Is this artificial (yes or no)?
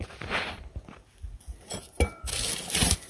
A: no